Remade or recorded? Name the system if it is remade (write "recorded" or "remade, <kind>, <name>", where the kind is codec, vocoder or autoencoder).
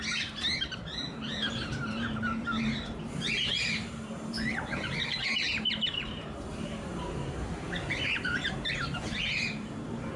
remade, vocoder, BigVGAN v2